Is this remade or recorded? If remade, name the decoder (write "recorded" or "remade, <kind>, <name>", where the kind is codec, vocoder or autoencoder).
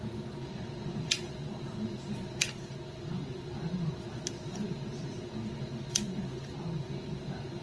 recorded